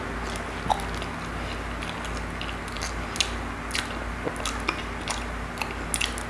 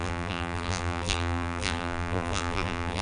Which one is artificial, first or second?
second